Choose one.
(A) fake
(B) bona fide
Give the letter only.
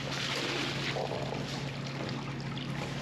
B